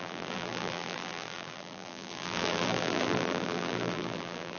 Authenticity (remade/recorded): remade